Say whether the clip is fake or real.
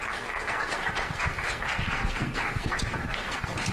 fake